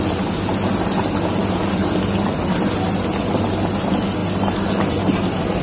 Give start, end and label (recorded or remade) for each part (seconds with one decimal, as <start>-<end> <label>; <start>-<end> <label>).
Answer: 0.0-5.6 recorded